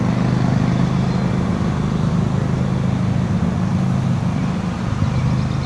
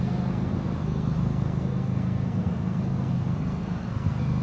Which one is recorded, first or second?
first